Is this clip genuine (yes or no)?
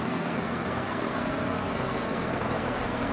no